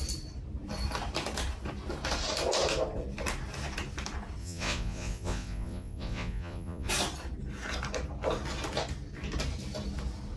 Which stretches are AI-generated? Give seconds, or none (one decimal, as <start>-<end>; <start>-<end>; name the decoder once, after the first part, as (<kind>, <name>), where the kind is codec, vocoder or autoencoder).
4.4-6.9 (vocoder, Vocos)